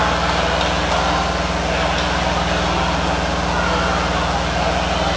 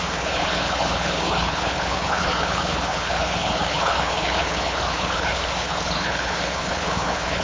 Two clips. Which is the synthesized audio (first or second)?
second